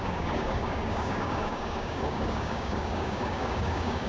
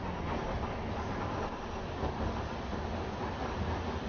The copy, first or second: first